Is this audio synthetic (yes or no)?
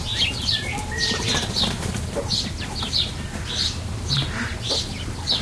yes